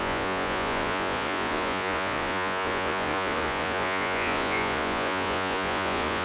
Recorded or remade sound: remade